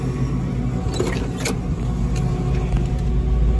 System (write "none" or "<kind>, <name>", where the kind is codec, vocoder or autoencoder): none